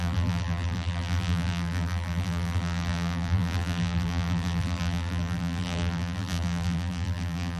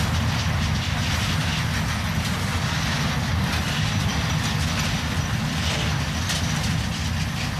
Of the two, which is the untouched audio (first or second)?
second